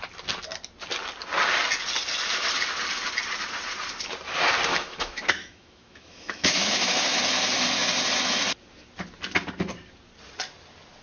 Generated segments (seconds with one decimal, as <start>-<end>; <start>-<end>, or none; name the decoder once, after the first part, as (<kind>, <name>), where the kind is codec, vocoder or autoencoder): 4.7-7.2 (autoencoder, DAC-VAE)